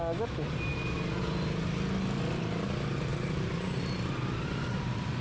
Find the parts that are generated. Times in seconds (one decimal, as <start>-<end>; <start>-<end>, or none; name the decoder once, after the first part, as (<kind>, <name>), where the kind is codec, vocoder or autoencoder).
3.1-3.8 (vocoder, BigVGAN v2)